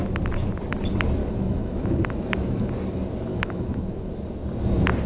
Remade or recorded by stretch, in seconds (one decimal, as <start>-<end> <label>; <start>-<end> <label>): 0.0-1.2 recorded; 1.2-2.7 remade; 2.7-3.3 recorded; 3.3-4.1 remade; 4.1-5.1 recorded